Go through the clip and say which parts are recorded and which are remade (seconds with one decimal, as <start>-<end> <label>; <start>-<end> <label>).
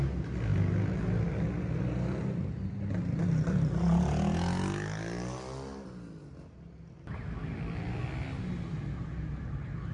0.0-9.9 recorded